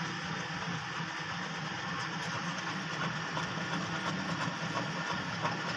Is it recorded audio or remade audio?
recorded